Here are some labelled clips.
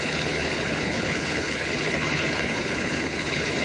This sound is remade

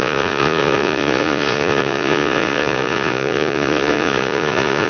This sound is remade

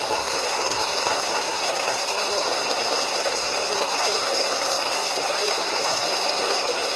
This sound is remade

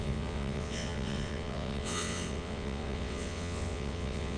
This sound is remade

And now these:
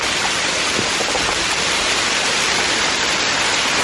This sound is remade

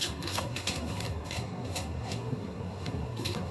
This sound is remade